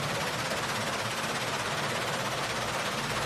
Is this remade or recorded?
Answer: remade